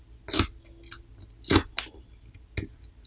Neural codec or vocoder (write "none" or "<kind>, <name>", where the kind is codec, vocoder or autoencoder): none